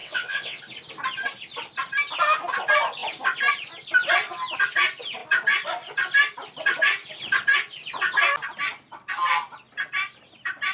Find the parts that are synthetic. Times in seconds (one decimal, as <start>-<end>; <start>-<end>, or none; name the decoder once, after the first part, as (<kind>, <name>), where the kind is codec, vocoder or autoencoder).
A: 0.0-0.6 (vocoder, WaveNeXt)